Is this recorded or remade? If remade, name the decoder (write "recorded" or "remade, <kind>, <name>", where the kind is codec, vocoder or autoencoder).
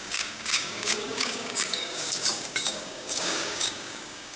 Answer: remade, codec, DAC